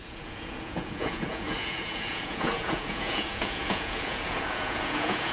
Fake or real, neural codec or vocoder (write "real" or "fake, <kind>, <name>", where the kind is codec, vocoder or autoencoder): fake, vocoder, Vocos